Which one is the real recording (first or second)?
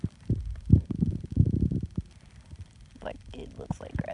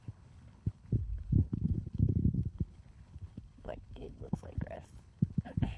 first